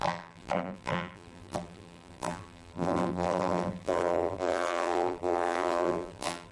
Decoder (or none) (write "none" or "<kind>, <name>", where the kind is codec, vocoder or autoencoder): vocoder, BigVGAN v2